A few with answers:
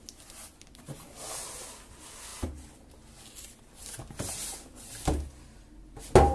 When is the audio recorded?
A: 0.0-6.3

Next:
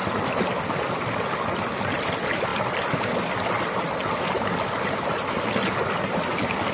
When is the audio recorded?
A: 0.0-6.7

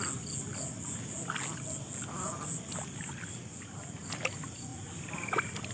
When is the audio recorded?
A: 0.0-5.7